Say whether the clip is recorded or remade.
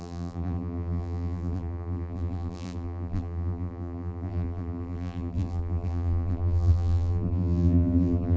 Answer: remade